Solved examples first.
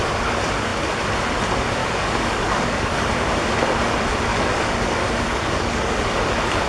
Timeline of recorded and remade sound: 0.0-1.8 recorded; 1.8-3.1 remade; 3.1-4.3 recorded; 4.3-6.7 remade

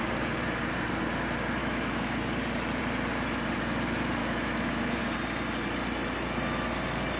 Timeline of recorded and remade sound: 0.0-1.6 recorded; 1.6-2.2 remade; 2.2-4.2 recorded; 4.2-5.0 remade; 5.0-7.2 recorded

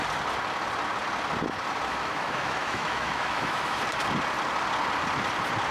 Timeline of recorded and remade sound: 0.0-1.9 recorded; 1.9-3.8 remade; 3.8-5.7 recorded

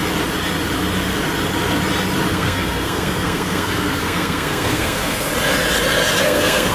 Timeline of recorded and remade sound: 0.0-2.3 recorded; 2.3-5.3 remade; 5.3-6.2 recorded; 6.2-6.7 remade

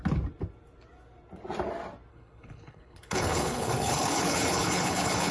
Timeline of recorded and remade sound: 0.0-2.1 recorded; 2.1-5.3 remade